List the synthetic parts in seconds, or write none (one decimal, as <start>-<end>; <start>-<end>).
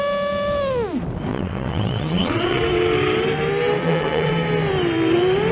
1.3-2.6; 3.8-4.3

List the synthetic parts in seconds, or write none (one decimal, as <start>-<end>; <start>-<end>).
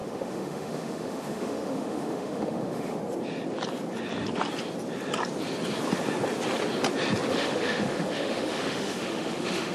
0.0-3.0; 7.3-9.7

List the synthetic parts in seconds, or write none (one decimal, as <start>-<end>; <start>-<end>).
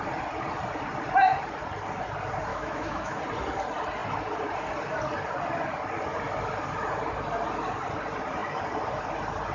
2.5-3.2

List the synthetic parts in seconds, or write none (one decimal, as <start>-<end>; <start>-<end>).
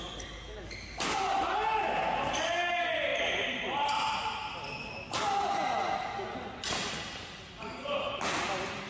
none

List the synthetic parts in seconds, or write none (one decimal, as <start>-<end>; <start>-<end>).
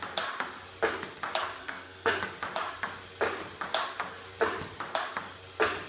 1.6-2.2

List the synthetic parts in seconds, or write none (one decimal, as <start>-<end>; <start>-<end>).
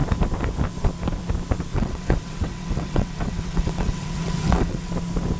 1.7-4.9